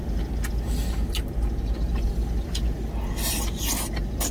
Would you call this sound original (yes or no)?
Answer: yes